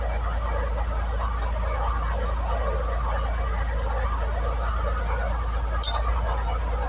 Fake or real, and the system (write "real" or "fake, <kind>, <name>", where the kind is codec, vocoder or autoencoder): real